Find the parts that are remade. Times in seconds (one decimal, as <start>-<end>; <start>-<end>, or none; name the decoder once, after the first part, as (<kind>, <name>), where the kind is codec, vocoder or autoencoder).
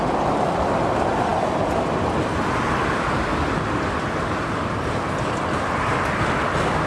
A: none